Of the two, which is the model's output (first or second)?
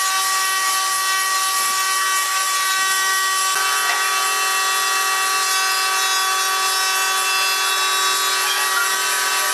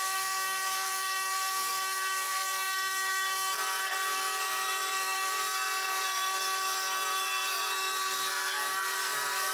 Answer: second